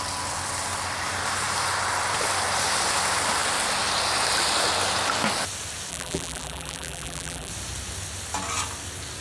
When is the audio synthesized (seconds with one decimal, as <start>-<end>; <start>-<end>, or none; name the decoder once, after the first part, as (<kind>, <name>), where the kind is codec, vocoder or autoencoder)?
5.9-7.5 (vocoder, BigVGAN v2)